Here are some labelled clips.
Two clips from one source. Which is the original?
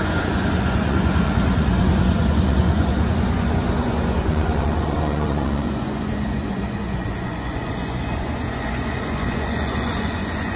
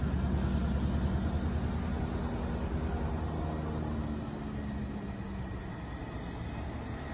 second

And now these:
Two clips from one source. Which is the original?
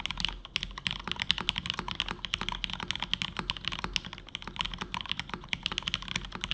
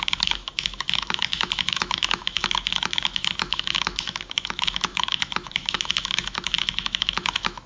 first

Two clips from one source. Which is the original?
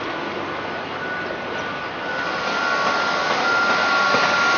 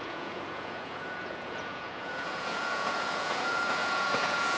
first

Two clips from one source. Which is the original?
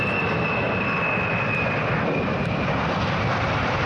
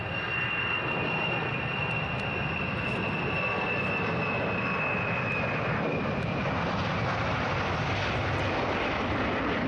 second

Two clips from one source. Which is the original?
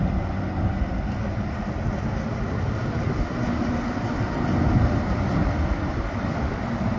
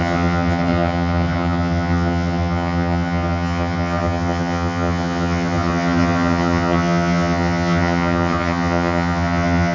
first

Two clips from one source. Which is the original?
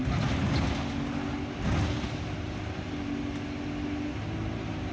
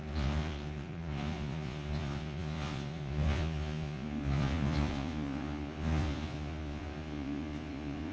first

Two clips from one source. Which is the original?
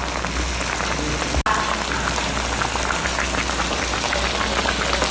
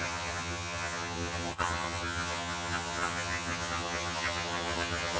first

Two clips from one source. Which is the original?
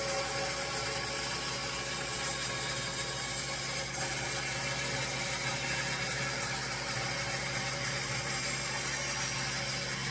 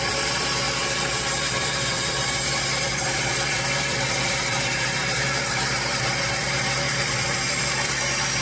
first